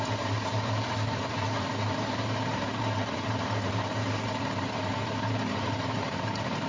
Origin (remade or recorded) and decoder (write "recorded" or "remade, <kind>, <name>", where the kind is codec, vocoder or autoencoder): remade, vocoder, BigVGAN v2